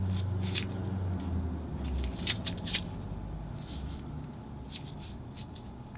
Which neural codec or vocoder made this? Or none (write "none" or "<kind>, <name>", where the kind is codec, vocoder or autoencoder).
none